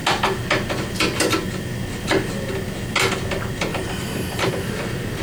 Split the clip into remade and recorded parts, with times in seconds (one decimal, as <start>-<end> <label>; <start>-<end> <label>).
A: 0.0-3.7 recorded; 3.7-4.5 remade; 4.5-5.2 recorded